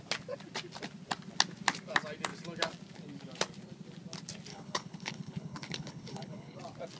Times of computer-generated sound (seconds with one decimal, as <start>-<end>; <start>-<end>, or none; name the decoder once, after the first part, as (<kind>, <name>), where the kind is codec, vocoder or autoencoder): 4.5-6.6 (codec, HILCodec)